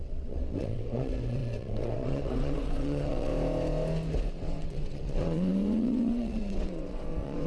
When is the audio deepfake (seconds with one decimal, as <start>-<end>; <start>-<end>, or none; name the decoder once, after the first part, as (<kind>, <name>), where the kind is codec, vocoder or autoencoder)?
0.0-3.3 (vocoder, WaveNeXt); 4.3-7.5